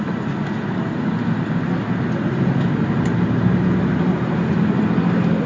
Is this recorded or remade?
recorded